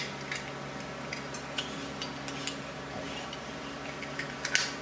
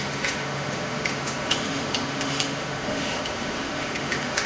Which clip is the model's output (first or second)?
second